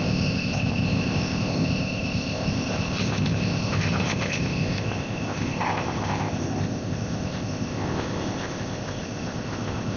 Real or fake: fake